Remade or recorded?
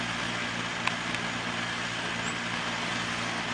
recorded